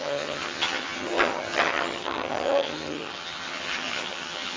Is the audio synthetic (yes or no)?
yes